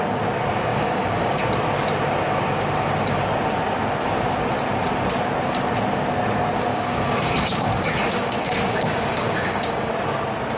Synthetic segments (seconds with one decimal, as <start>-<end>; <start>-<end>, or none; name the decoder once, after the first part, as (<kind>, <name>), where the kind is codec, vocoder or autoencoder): 0.7-1.4 (codec, DAC); 6.7-9.9